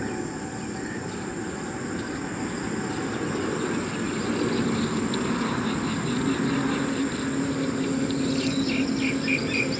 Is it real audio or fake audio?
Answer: real